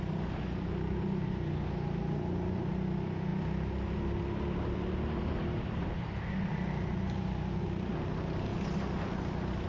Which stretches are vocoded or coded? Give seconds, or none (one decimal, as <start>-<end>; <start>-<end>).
none

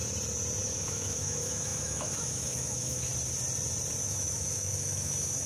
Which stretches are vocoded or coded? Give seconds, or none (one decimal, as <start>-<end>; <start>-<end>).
0.6-3.1; 4.0-5.5